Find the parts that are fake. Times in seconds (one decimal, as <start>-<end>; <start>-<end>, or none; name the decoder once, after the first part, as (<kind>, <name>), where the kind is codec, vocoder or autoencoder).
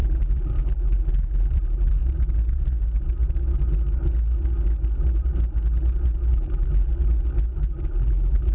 0.0-2.0 (vocoder, BigVGAN v2); 6.3-6.9; 7.8-8.5